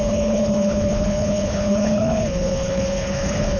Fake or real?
fake